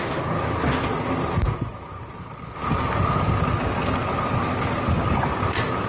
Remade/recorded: recorded